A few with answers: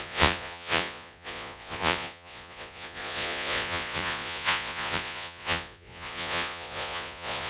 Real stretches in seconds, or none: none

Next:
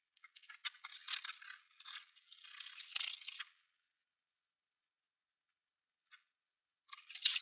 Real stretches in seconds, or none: none

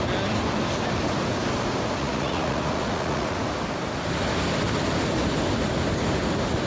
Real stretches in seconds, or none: 0.0-2.0; 3.4-6.7

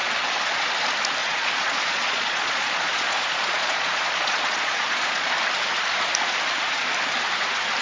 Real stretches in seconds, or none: 0.7-1.2; 5.3-7.8